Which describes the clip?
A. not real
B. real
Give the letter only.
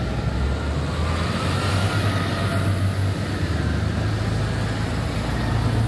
B